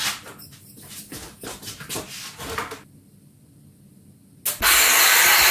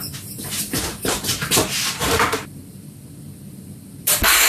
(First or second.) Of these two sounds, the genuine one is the first